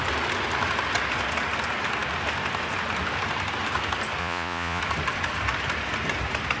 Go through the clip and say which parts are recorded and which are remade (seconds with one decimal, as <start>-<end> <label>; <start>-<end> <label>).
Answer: 0.0-4.2 recorded; 4.2-4.8 remade; 4.8-6.6 recorded